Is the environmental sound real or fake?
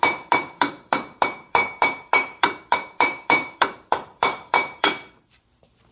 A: fake